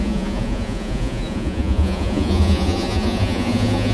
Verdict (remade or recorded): remade